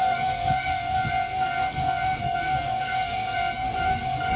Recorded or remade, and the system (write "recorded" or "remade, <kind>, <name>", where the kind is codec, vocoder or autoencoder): remade, codec, SNAC